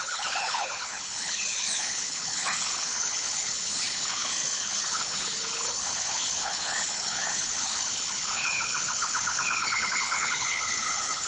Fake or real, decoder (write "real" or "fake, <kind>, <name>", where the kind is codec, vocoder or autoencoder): fake, codec, HILCodec